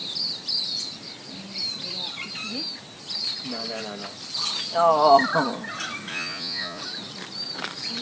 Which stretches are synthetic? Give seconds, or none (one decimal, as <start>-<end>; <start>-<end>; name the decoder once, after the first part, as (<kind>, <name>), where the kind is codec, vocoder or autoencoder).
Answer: 6.1-6.8 (vocoder, Vocos)